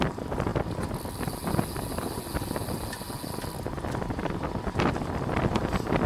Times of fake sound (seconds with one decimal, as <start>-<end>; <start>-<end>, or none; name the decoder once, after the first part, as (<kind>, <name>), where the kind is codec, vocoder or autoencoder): none